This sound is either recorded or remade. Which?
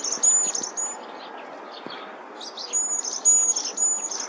recorded